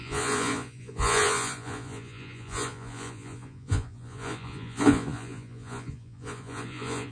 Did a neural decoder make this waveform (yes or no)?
yes